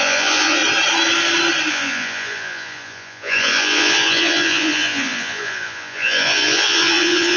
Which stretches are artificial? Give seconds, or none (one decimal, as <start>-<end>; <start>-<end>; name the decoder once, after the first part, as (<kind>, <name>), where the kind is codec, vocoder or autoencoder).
0.0-0.6 (vocoder, Vocos); 1.7-7.4